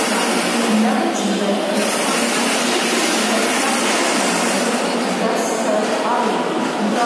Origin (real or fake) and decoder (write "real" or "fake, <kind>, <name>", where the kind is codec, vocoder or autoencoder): real